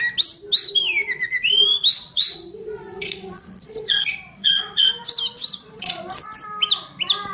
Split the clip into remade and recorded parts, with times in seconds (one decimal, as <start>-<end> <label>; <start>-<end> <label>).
0.0-2.0 recorded; 2.0-4.9 remade; 4.9-5.4 recorded; 5.4-6.0 remade; 6.0-7.3 recorded